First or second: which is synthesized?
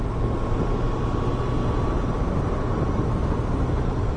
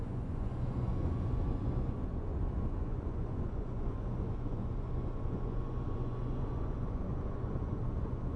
second